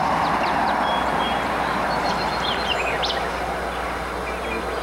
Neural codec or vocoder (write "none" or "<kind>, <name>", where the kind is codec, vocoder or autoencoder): none